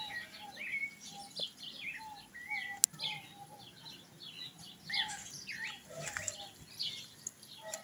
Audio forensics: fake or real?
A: real